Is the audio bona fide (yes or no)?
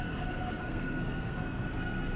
no